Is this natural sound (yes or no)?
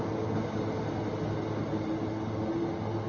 yes